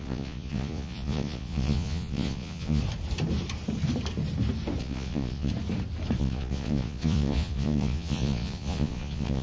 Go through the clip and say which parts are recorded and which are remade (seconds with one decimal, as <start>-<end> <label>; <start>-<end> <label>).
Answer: 0.0-2.8 remade; 2.8-4.8 recorded; 4.8-5.5 remade; 5.5-6.2 recorded; 6.2-9.4 remade